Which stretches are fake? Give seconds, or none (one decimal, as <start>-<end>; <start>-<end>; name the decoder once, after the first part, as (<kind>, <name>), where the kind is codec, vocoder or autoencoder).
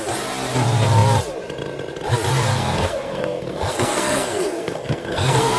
2.5-5.6 (codec, SNAC)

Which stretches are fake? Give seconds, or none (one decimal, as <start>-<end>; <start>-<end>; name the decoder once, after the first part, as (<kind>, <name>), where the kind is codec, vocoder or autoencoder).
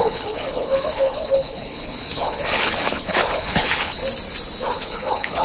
0.0-4.0 (codec, HILCodec); 4.6-5.4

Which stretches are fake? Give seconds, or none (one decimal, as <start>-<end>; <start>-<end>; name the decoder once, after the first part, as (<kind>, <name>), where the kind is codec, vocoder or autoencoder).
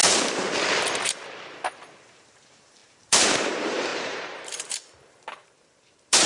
2.0-6.3 (vocoder, BigVGAN v2)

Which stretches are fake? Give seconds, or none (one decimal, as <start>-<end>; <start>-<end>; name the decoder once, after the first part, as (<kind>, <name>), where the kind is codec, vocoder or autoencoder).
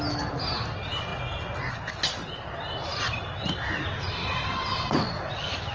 4.2-5.3 (vocoder, WaveNeXt)